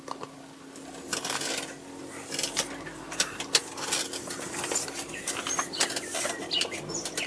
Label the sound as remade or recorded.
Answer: recorded